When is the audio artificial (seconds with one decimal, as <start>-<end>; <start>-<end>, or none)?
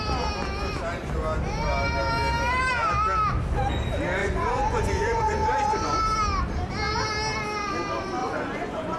4.2-6.0; 8.2-9.0